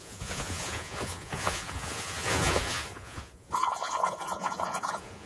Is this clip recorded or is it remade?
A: remade